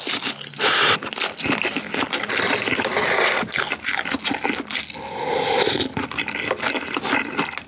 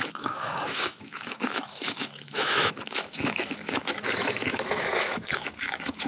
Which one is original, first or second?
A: first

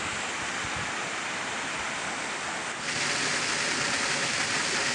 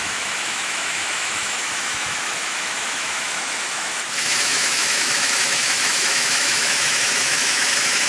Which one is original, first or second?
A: first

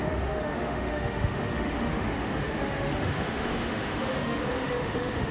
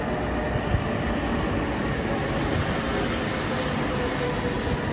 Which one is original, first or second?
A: second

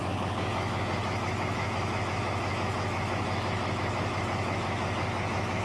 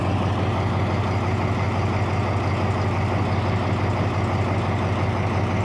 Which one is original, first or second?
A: second